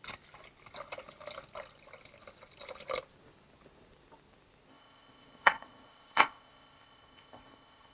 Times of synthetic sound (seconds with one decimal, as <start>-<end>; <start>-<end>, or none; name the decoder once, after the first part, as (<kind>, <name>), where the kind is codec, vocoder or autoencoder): 4.7-7.9 (codec, ZipCodec)